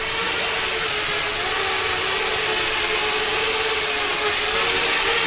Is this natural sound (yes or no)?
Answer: yes